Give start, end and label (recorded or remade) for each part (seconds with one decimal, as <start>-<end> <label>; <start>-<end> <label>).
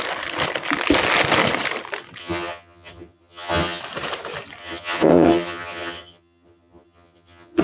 0.0-2.2 recorded; 2.2-3.8 remade; 3.8-4.6 recorded; 4.6-7.6 remade